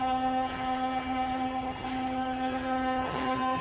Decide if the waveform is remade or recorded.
remade